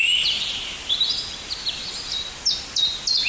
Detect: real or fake real